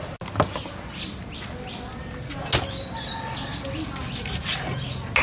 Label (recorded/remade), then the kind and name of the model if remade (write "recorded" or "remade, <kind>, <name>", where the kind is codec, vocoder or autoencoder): recorded